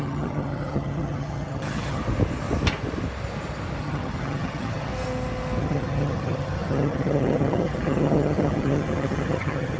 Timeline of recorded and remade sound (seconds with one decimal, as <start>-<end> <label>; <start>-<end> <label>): 0.0-2.0 remade; 2.0-3.8 recorded; 3.8-4.9 remade; 4.9-5.6 recorded; 5.6-9.8 remade